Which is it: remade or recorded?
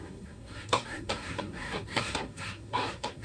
remade